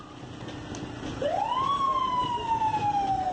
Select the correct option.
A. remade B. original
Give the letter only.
B